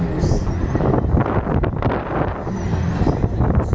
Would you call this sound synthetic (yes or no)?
no